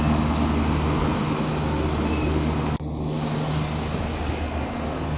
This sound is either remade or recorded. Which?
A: recorded